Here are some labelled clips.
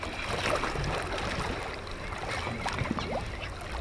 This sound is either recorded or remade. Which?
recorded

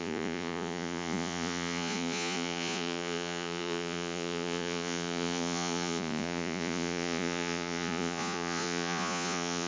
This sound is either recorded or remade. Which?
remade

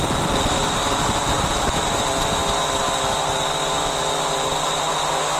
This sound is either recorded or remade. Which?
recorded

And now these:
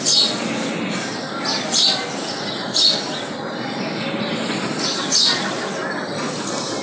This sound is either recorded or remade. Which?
recorded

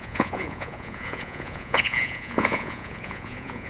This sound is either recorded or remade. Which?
remade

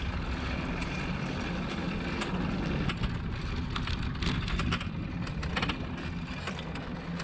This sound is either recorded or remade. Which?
recorded